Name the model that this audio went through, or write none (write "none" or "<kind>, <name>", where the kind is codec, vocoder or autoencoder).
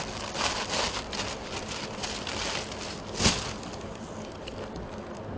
none